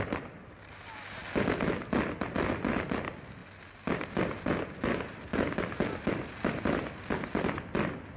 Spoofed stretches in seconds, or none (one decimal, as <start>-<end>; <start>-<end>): none